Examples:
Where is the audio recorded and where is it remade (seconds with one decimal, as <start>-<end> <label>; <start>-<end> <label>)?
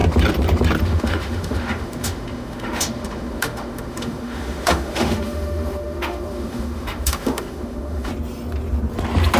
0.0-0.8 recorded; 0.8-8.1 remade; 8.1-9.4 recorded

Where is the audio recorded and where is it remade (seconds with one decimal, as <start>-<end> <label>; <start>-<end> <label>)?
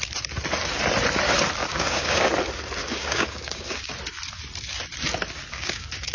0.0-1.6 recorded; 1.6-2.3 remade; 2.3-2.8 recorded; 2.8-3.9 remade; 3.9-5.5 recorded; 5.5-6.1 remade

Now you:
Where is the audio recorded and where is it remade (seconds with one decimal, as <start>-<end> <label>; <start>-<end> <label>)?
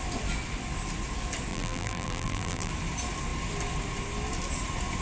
0.0-1.5 recorded; 1.5-2.7 remade; 2.7-5.0 recorded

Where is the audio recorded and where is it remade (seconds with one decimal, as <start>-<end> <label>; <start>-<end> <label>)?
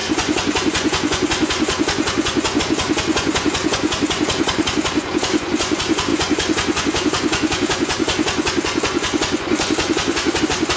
0.0-10.8 remade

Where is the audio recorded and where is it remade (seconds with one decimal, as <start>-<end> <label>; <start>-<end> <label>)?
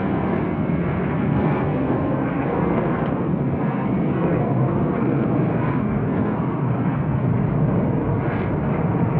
0.0-7.3 remade; 7.3-9.2 recorded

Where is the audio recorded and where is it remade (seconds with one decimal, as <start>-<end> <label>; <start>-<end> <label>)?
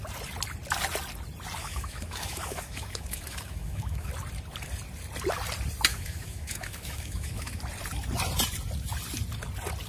0.0-1.6 recorded; 1.6-4.1 remade; 4.1-5.9 recorded; 5.9-7.6 remade; 7.6-9.9 recorded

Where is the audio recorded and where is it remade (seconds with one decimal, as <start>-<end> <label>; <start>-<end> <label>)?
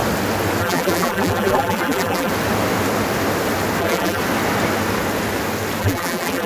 0.0-0.6 recorded; 0.6-2.3 remade; 2.3-3.8 recorded; 3.8-4.2 remade; 4.2-5.8 recorded; 5.8-6.5 remade